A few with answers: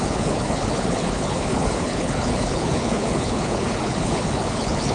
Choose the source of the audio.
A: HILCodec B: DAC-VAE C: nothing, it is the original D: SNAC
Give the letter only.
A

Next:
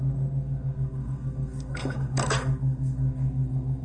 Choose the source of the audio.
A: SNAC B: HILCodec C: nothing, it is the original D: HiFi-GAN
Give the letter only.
A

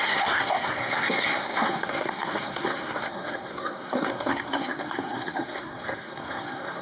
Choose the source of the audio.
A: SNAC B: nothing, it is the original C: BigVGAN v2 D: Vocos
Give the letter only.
A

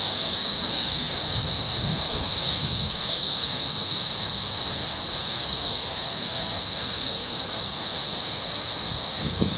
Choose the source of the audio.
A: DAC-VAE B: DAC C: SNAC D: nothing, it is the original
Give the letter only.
C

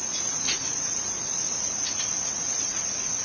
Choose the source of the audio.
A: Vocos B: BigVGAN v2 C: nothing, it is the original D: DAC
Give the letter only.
A